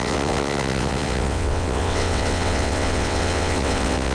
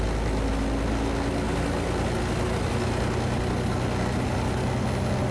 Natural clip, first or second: second